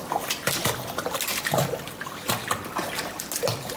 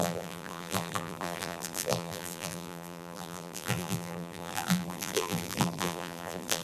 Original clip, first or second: first